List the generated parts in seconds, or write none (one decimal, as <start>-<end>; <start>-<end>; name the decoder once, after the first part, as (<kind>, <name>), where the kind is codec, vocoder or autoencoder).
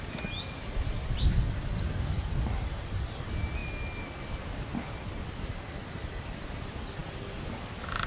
none